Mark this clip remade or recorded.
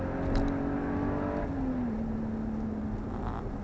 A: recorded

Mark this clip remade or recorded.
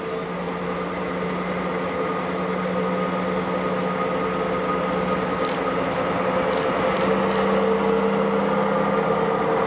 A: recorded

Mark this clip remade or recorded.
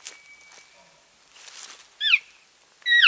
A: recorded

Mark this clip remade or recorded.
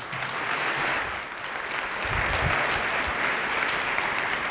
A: recorded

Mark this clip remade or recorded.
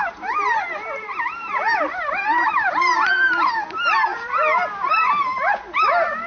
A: remade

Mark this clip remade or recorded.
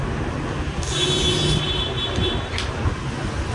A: recorded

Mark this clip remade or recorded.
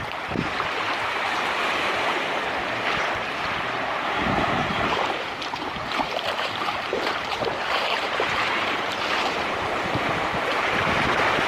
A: remade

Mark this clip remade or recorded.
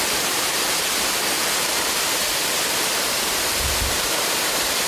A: remade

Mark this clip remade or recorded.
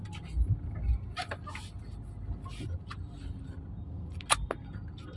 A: recorded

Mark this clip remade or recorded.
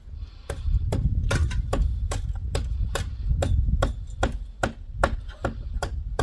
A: recorded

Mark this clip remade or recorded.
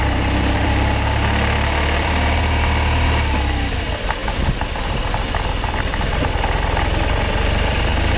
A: remade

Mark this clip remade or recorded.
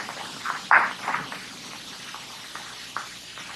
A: recorded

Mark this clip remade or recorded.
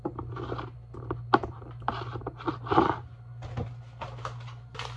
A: recorded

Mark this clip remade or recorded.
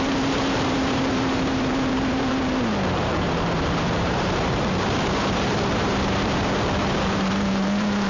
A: remade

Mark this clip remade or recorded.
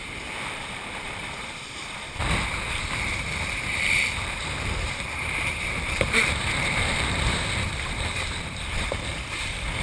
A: remade